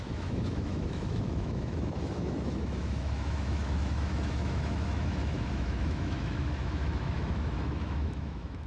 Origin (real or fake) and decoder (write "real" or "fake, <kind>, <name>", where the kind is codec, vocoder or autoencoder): fake, autoencoder, DAC-VAE